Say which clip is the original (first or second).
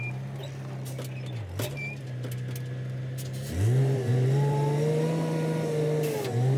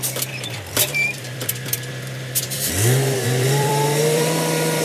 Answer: first